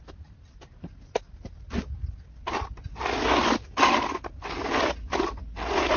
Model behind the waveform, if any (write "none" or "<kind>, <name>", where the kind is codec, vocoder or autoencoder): none